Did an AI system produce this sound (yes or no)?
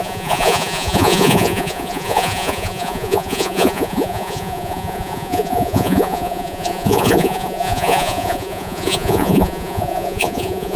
yes